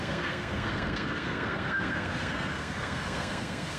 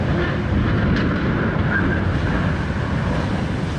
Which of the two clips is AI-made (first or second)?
first